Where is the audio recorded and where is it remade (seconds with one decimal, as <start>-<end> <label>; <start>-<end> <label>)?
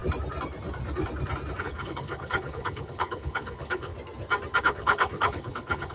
0.0-1.6 recorded; 1.6-3.9 remade; 3.9-4.6 recorded; 4.6-5.9 remade